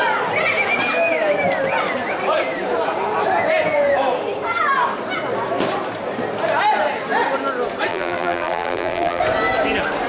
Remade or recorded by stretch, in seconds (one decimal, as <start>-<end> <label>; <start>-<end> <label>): 0.0-7.9 recorded; 7.9-9.2 remade; 9.2-10.1 recorded